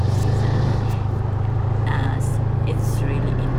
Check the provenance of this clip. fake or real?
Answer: real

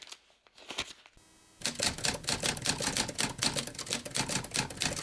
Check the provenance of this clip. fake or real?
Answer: real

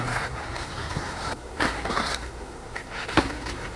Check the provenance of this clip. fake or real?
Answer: fake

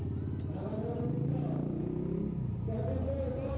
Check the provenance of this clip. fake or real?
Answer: real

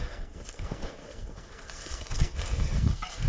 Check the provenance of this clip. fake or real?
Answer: fake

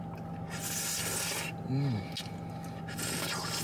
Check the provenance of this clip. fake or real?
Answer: real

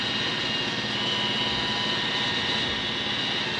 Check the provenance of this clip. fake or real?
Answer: real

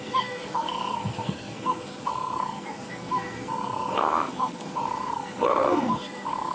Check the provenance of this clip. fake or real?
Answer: fake